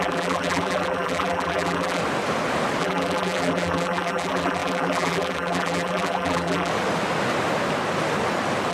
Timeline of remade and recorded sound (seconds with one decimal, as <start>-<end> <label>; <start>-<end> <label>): 0.0-2.0 remade; 2.0-2.8 recorded; 2.8-6.7 remade; 6.7-8.7 recorded

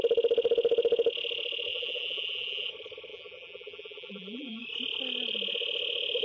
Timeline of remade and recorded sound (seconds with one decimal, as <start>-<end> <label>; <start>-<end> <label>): 0.0-1.7 recorded; 1.7-2.7 remade; 2.7-3.1 recorded; 3.1-4.6 remade; 4.6-6.2 recorded